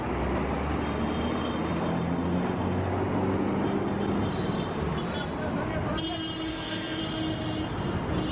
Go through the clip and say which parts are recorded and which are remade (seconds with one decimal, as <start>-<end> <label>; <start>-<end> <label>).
0.0-6.5 recorded; 6.5-7.0 remade; 7.0-8.3 recorded